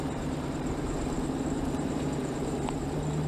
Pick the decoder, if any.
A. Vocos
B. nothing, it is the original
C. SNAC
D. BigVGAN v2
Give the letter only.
D